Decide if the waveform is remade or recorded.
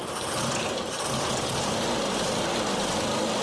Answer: recorded